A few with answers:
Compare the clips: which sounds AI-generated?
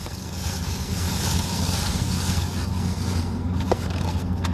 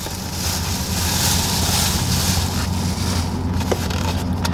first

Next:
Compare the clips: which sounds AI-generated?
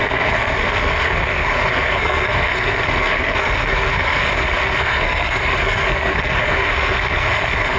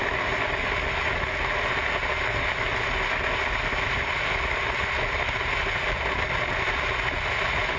first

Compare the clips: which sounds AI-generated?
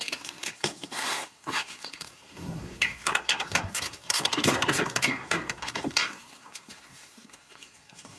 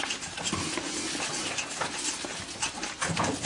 first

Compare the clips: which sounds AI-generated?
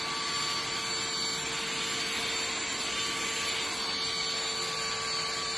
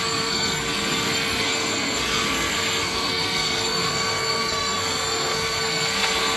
second